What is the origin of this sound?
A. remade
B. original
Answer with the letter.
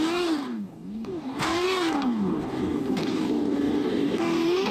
A